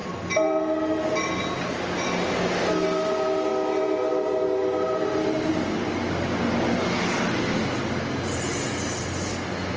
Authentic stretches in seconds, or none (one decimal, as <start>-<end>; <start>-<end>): 0.0-9.8